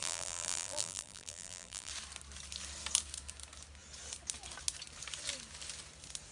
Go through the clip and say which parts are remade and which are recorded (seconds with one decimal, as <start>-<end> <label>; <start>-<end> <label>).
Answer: 0.0-1.9 remade; 1.9-6.3 recorded